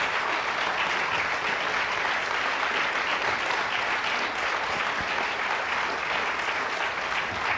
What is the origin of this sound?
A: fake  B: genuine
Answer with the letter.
B